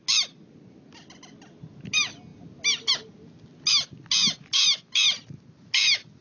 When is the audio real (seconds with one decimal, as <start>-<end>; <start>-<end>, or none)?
0.0-6.2